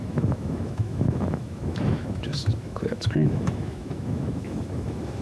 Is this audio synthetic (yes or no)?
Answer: yes